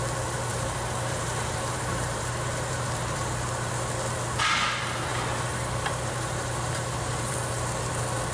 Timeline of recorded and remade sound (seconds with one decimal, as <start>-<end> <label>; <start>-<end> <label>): 0.0-0.5 recorded; 0.5-3.2 remade; 3.2-5.1 recorded; 5.1-7.3 remade; 7.3-8.3 recorded